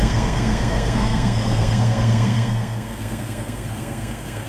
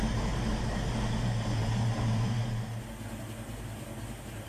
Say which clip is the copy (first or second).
first